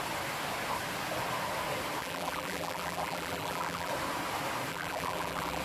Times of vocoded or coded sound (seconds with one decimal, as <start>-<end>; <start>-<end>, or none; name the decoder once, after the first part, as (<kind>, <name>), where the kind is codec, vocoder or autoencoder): 2.0-3.9 (vocoder, BigVGAN v2); 4.7-5.6